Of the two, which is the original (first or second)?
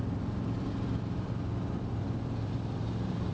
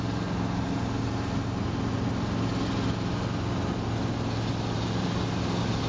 second